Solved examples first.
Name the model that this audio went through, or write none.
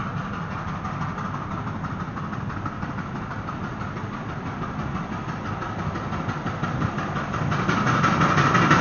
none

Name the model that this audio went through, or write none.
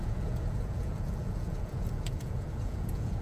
vocoder, Vocos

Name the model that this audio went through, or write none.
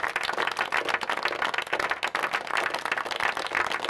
none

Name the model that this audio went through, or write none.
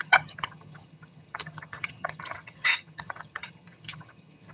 vocoder, HiFi-GAN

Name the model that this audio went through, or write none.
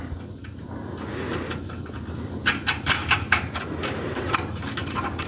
none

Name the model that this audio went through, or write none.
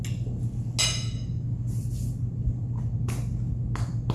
none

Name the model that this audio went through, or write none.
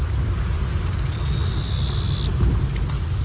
none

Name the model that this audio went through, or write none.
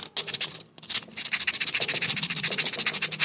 none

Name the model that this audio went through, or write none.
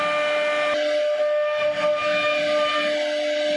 none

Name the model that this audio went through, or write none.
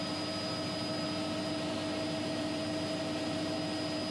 none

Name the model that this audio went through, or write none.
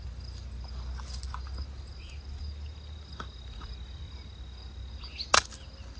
none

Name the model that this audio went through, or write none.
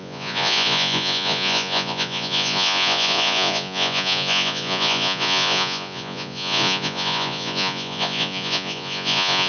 vocoder, Vocos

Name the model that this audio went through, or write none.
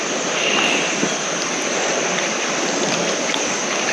none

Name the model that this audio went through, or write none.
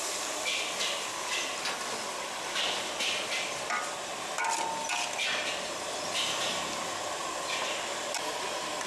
none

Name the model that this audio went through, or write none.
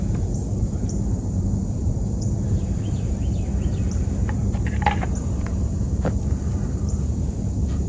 vocoder, BigVGAN v2